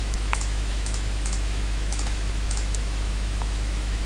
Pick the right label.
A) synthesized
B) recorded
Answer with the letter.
A